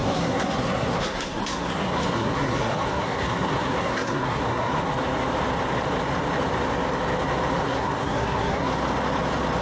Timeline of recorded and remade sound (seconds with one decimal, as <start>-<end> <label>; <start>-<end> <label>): 0.0-4.9 remade; 4.9-7.6 recorded; 7.6-8.7 remade; 8.7-9.6 recorded